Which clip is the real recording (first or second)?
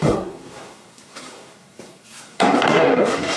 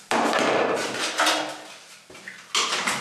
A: second